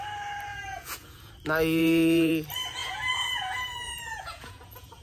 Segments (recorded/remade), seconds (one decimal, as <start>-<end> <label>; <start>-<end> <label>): 0.0-0.5 recorded; 0.5-1.3 remade; 1.3-1.8 recorded; 1.8-2.3 remade; 2.3-2.8 recorded; 2.8-5.0 remade